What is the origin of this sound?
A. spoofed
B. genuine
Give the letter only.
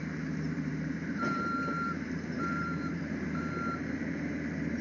A